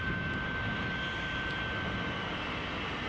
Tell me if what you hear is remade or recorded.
recorded